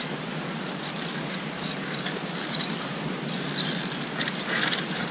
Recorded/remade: recorded